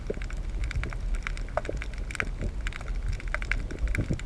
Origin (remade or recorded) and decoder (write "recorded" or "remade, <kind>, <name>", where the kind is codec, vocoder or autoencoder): recorded